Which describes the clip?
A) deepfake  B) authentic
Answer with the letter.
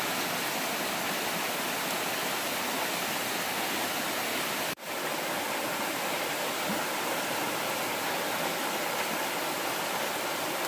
B